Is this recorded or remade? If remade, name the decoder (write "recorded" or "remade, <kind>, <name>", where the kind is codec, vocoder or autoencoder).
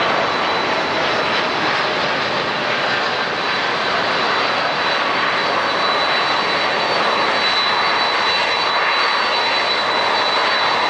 recorded